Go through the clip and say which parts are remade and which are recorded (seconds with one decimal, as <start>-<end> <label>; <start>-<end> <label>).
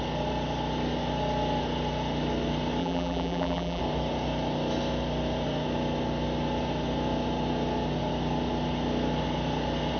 0.0-2.8 recorded; 2.8-3.8 remade; 3.8-10.0 recorded